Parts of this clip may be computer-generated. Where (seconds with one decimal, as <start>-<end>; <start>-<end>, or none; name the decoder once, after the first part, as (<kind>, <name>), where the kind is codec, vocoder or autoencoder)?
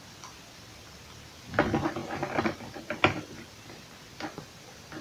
none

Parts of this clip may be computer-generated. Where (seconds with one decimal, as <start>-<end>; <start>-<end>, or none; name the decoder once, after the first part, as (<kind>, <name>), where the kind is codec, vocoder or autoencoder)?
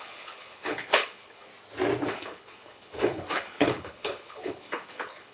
0.0-1.5 (codec, HILCodec); 2.1-5.3